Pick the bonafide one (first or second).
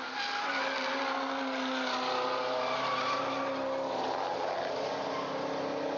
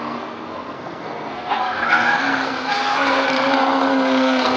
first